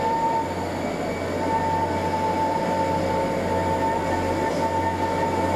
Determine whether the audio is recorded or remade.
recorded